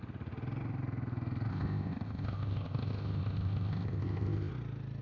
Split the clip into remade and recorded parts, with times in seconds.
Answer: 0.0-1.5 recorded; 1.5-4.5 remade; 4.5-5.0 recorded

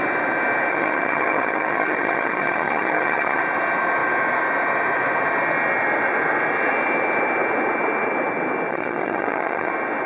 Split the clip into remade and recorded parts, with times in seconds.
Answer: 0.0-0.7 recorded; 0.7-3.4 remade; 3.4-8.7 recorded; 8.7-9.7 remade; 9.7-10.1 recorded

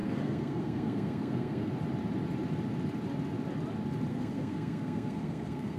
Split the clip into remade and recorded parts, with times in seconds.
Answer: 0.0-1.7 remade; 1.7-4.1 recorded; 4.1-5.8 remade